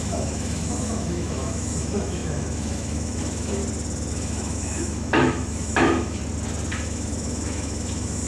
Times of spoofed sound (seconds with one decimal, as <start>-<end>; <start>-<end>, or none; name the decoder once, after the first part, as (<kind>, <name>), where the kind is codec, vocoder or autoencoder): 0.0-3.6 (autoencoder, DAC-VAE); 4.1-6.2; 6.7-8.3